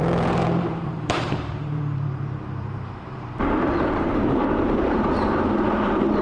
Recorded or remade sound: remade